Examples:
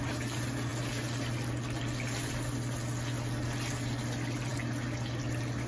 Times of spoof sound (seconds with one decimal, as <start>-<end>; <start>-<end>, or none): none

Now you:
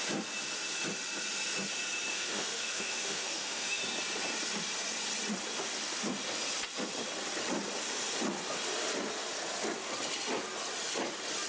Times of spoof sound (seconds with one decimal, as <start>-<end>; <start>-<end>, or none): 2.1-3.8

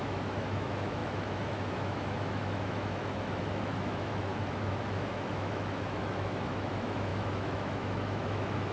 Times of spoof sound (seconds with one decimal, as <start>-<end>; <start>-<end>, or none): 0.0-8.7